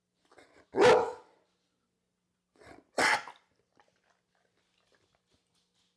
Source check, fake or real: real